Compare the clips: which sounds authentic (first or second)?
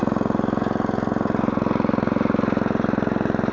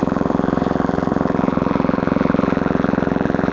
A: first